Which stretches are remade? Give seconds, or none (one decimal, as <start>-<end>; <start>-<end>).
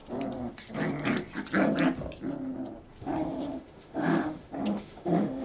3.0-5.4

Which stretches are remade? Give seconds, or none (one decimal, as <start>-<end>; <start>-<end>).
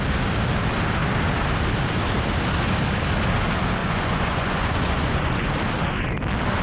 3.8-5.5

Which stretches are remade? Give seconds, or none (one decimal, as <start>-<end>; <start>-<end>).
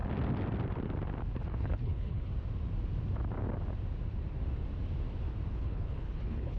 1.4-2.3; 5.5-6.6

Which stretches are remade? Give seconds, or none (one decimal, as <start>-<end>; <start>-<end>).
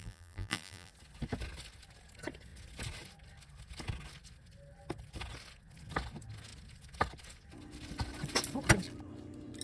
0.0-0.9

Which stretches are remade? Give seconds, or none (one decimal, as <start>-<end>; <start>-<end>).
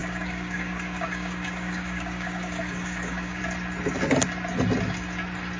0.0-3.4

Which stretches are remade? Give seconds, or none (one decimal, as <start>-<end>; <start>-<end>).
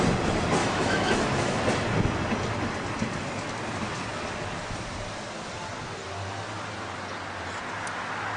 0.6-1.6